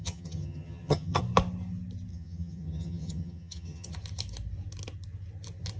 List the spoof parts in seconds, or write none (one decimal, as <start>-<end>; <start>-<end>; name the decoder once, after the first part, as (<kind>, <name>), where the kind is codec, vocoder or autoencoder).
0.0-1.2 (vocoder, HiFi-GAN); 2.1-3.9